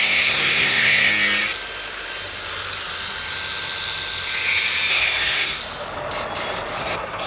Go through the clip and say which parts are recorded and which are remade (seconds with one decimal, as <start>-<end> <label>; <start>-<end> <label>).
0.0-1.1 remade; 1.1-4.9 recorded; 4.9-5.6 remade; 5.6-6.8 recorded; 6.8-7.3 remade